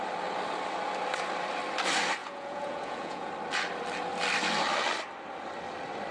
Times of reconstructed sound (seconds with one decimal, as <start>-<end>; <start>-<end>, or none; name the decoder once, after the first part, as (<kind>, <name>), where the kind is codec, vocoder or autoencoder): 2.2-3.3 (vocoder, Vocos)